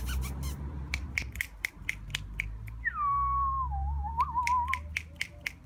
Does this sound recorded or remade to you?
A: recorded